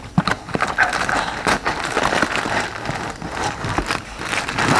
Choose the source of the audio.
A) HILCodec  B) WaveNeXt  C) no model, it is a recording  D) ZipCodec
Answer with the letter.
C